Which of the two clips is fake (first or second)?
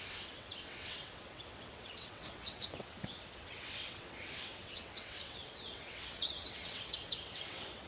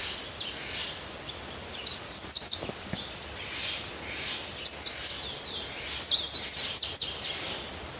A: first